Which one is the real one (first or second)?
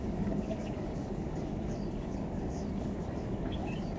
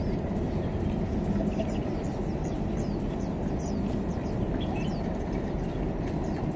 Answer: second